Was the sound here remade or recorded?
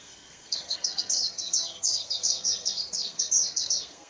remade